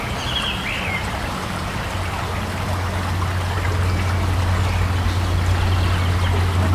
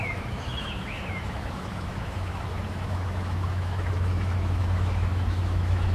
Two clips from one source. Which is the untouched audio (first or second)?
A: first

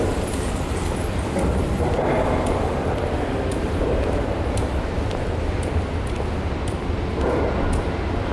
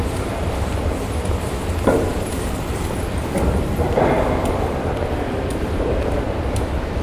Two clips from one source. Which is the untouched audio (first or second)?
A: first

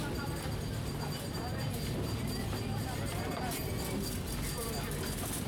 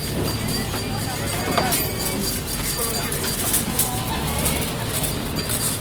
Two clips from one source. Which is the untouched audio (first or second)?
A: second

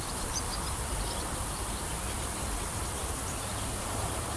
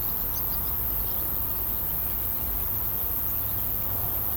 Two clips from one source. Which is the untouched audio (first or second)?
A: second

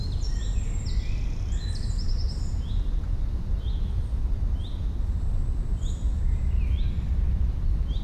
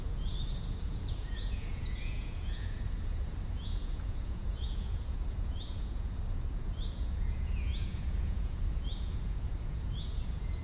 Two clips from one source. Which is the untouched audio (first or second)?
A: first